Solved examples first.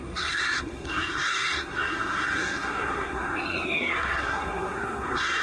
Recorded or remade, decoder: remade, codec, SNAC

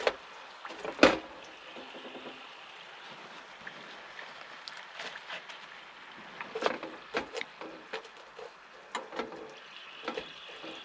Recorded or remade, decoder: recorded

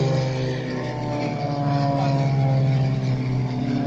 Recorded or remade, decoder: recorded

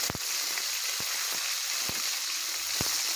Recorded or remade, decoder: recorded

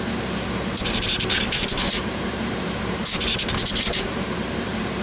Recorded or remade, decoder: remade, vocoder, BigVGAN v2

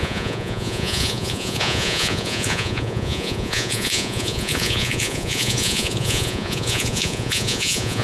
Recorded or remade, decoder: remade, vocoder, Vocos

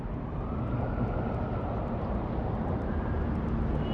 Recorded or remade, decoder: recorded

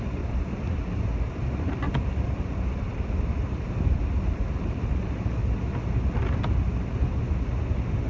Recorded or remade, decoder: recorded